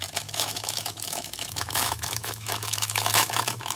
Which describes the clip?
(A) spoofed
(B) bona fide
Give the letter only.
A